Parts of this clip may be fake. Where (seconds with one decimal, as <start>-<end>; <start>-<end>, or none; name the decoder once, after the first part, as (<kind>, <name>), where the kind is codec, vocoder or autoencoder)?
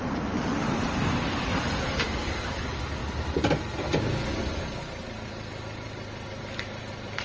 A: 0.0-3.0 (vocoder, BigVGAN v2); 4.3-7.2